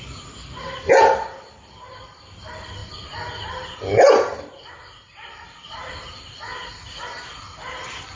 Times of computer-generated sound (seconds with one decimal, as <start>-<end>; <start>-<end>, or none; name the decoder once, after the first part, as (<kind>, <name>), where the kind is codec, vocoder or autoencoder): none